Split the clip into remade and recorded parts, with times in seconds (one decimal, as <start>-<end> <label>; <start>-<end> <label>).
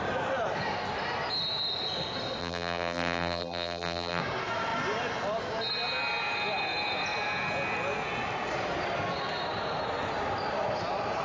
0.0-2.4 recorded; 2.4-4.2 remade; 4.2-11.2 recorded